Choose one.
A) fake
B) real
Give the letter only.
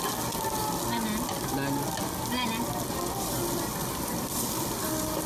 B